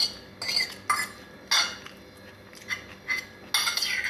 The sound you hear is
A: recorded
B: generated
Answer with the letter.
A